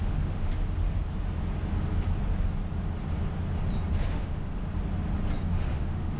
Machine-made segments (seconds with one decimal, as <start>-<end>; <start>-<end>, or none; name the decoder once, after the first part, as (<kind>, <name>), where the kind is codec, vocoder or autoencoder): 0.0-0.5 (autoencoder, DAC-VAE); 4.1-4.6; 5.5-6.2